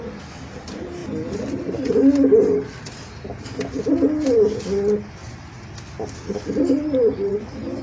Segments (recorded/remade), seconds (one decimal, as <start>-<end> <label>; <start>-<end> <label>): 0.0-7.8 recorded